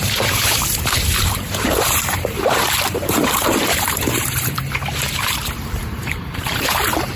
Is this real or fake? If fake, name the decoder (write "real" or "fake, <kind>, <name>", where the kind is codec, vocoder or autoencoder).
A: fake, vocoder, BigVGAN v2